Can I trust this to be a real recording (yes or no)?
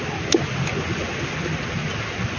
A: yes